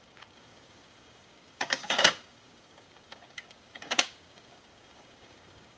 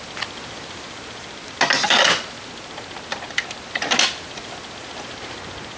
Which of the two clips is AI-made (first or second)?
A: first